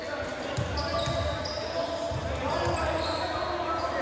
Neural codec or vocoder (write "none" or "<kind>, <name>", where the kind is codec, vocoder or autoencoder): none